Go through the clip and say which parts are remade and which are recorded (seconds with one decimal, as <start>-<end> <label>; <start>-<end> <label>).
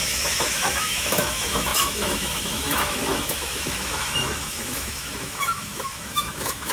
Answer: 0.0-6.7 remade